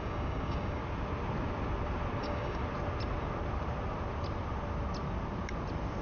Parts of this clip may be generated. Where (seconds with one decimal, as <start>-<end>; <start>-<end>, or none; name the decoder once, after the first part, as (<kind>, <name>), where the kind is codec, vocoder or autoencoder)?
0.0-0.8 (codec, DAC); 2.2-2.6